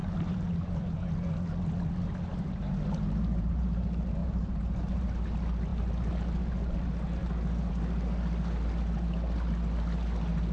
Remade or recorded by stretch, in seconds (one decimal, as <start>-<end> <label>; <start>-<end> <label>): 0.0-0.8 remade; 0.8-2.3 recorded; 2.3-3.6 remade; 3.6-4.2 recorded; 4.2-5.1 remade; 5.1-10.5 recorded